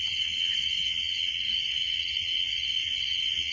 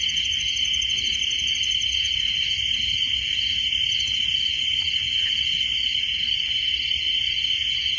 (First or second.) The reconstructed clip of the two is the first